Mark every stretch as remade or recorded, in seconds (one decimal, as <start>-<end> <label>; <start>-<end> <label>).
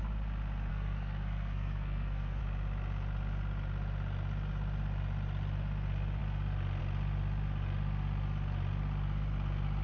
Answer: 0.0-0.7 recorded; 0.7-2.4 remade; 2.4-9.8 recorded